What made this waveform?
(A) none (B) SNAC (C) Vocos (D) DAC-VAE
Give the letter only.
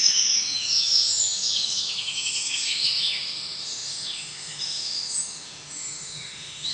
D